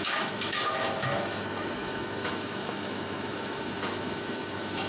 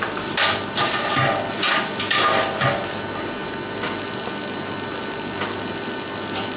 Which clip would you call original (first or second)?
second